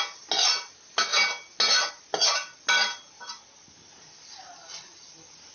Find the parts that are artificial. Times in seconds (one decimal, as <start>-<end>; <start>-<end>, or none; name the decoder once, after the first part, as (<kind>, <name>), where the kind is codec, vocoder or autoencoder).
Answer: none